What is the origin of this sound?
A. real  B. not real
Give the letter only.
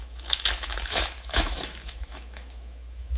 B